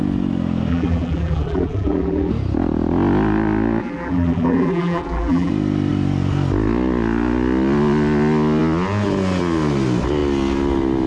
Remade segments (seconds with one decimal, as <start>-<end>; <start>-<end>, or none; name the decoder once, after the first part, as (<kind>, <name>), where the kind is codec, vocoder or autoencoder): 0.7-2.3 (vocoder, BigVGAN v2); 3.8-5.5